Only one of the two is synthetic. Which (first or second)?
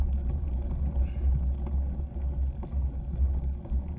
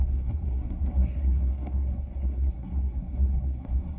second